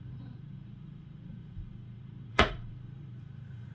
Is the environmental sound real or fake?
fake